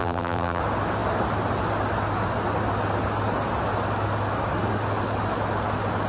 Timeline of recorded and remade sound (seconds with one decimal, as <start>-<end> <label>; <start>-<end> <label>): 0.0-0.6 remade; 0.6-6.1 recorded